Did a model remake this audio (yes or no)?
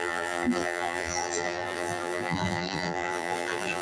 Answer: yes